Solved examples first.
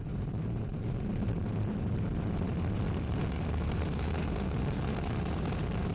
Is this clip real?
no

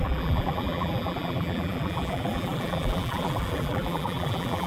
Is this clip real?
no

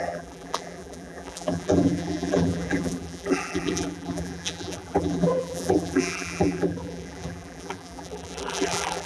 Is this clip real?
no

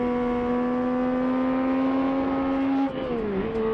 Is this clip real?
yes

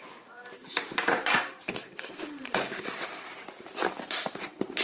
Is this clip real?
no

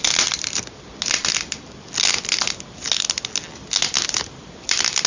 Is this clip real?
yes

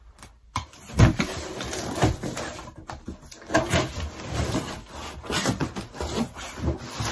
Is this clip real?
no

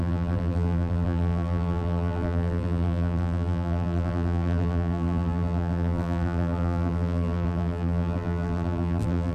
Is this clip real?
no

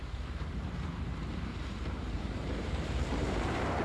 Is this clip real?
no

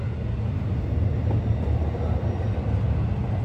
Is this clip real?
yes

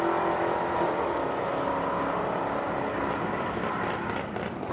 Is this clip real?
yes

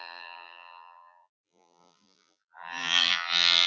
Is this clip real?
no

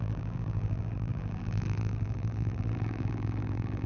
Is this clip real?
no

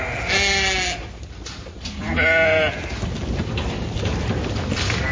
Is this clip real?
yes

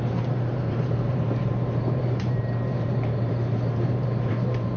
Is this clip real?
no